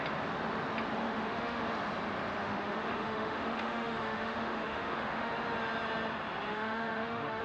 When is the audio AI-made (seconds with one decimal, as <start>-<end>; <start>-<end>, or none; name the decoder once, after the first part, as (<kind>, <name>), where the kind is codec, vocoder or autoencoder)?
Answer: 1.0-1.6 (autoencoder, DAC-VAE); 2.4-5.3; 6.5-7.4